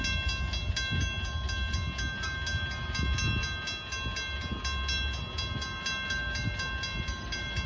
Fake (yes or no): no